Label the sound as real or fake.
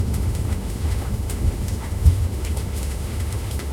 fake